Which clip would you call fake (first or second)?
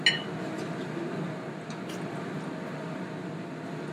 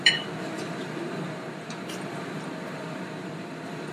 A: second